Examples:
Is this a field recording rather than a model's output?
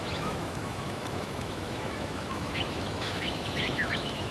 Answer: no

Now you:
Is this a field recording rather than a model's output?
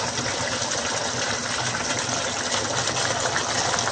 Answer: yes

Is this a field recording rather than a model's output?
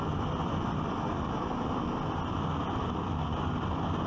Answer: yes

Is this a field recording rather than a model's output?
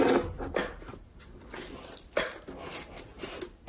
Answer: yes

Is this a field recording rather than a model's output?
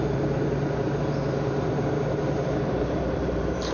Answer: no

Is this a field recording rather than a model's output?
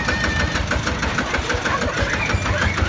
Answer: yes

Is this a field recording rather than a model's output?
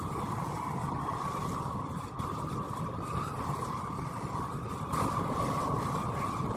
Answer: yes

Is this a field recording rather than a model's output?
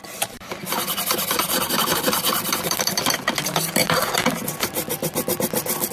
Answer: no